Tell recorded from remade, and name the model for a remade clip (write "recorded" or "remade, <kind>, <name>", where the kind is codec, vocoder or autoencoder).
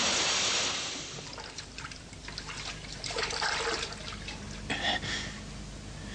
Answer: recorded